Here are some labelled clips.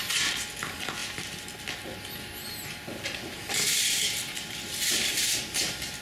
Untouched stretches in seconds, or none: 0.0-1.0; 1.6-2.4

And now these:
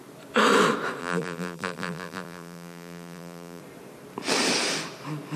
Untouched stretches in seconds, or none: 0.0-1.0; 3.6-5.4

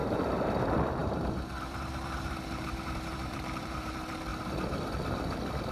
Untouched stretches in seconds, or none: 0.6-1.0; 3.9-5.7

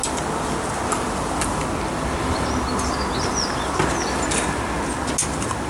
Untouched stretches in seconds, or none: 0.0-5.7

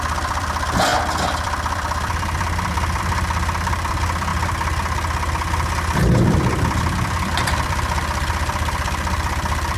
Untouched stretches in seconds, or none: 4.3-6.8

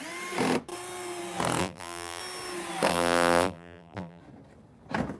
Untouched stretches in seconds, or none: 0.0-1.6; 2.2-2.9; 4.2-5.2